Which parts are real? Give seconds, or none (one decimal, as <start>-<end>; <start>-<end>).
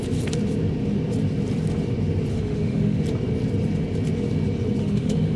0.0-2.3; 3.0-4.8